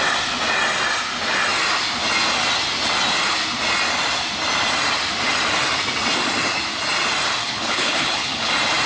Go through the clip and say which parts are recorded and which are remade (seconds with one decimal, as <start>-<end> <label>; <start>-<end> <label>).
0.0-7.4 recorded; 7.4-8.5 remade; 8.5-8.9 recorded